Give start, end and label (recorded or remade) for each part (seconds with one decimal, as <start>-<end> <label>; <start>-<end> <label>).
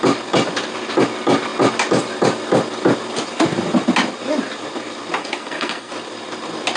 0.0-5.2 recorded; 5.2-5.9 remade; 5.9-6.8 recorded